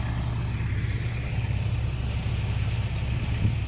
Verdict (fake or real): real